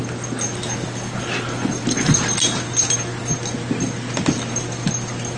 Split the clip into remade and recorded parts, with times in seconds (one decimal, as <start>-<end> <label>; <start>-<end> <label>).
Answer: 0.0-5.4 recorded